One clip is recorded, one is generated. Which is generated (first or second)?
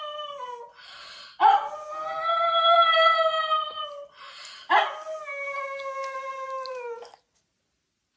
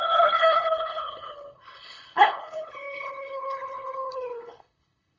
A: second